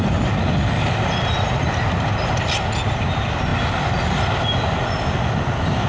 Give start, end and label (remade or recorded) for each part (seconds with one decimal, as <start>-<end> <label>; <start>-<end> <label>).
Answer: 0.0-5.9 recorded